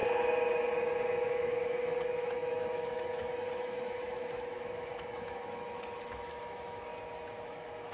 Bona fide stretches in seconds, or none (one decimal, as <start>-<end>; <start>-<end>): 0.0-0.8; 6.9-7.4